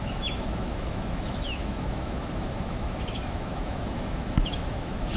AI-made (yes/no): yes